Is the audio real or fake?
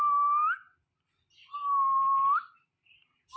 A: real